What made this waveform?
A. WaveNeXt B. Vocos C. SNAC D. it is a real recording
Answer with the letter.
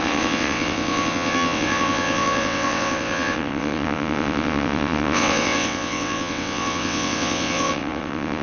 A